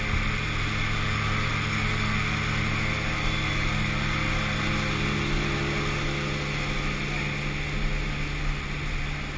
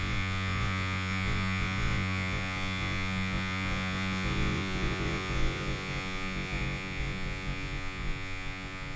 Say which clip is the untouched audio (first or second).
first